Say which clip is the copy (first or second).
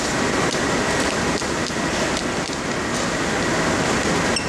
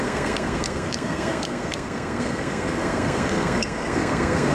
second